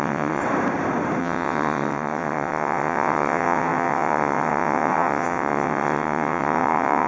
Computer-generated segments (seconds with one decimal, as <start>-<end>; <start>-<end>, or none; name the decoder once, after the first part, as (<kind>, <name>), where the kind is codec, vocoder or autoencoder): 0.0-0.4 (vocoder, WaveNeXt); 1.2-7.1